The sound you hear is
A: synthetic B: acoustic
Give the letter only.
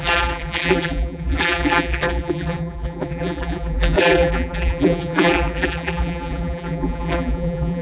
A